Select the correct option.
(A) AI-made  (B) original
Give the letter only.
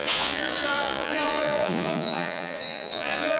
A